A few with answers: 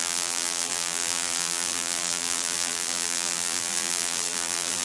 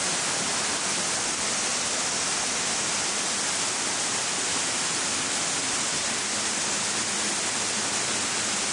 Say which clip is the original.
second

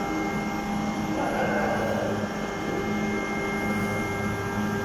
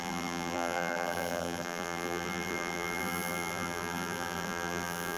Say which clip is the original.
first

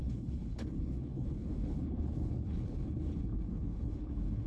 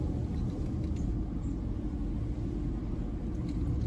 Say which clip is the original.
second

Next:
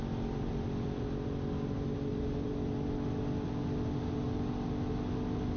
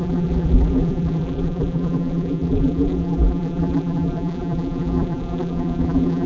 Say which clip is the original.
first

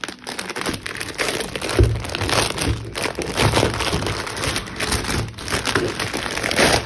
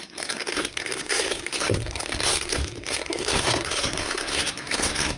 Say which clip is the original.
first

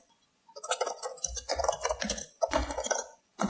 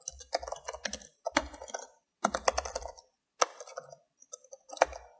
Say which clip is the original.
second